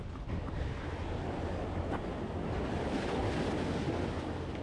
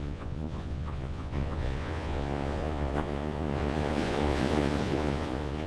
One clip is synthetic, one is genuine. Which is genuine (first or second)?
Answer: first